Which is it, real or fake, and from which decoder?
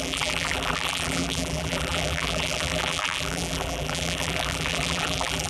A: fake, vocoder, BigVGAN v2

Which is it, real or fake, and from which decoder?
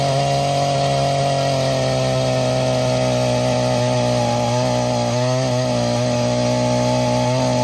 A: real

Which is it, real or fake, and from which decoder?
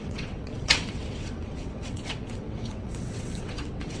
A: fake, vocoder, WaveNeXt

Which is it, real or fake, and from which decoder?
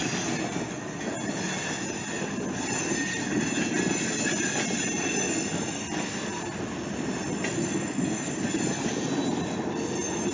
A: real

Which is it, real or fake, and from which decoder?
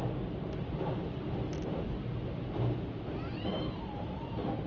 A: real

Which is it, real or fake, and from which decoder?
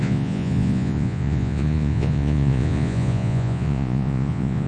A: fake, vocoder, Vocos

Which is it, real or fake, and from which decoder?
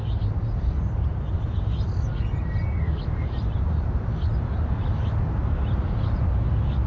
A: real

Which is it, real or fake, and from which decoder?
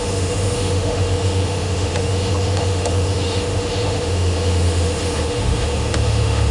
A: fake, autoencoder, DAC-VAE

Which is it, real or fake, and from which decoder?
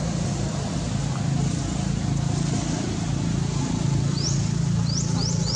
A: real